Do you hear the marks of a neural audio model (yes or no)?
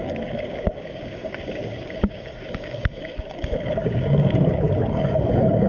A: yes